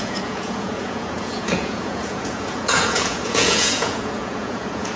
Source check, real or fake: fake